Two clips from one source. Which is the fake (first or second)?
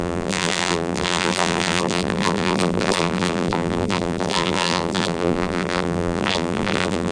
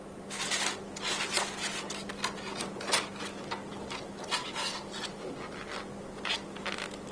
first